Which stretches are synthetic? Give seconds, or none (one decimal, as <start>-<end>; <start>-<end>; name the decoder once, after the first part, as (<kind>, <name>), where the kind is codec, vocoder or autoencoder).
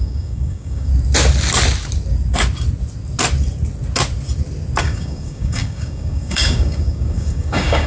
0.0-0.9 (codec, DAC); 4.8-7.9